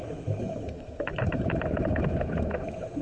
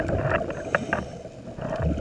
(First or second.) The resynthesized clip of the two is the first